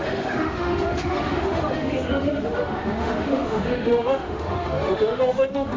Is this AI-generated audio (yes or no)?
yes